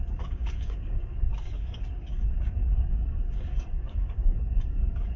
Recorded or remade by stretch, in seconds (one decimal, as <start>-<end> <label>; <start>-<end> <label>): 0.0-5.2 remade